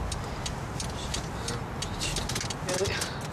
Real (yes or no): yes